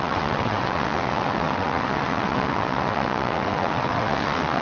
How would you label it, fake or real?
fake